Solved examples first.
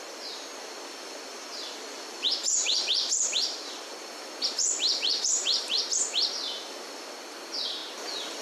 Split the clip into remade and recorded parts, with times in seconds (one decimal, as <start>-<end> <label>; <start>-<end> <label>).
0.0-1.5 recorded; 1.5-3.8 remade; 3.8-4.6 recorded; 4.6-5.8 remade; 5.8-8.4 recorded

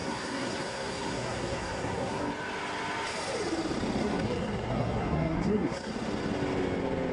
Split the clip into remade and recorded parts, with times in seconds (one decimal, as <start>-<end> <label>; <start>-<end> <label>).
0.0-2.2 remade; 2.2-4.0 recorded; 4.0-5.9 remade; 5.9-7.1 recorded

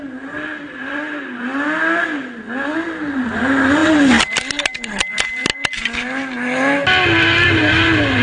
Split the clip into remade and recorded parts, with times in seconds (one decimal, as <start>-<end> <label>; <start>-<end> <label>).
0.0-8.2 recorded